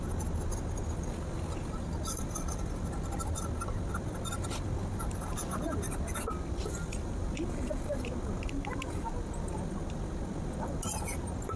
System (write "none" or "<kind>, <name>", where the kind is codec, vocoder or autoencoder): none